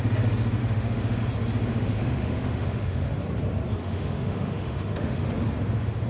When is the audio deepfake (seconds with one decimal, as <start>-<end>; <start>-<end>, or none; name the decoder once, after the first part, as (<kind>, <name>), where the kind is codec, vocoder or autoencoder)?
0.6-1.2 (autoencoder, DAC-VAE); 1.7-3.1; 3.8-5.3